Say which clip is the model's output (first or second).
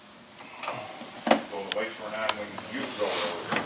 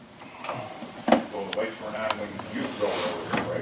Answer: second